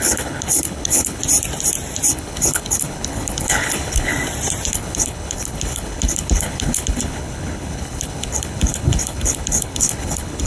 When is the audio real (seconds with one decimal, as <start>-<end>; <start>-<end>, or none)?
1.2-2.1; 4.1-4.7